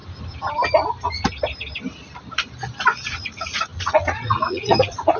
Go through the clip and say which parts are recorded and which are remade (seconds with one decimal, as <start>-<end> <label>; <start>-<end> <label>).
0.0-3.1 recorded; 3.1-5.2 remade